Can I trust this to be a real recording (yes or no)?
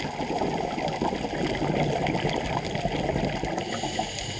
yes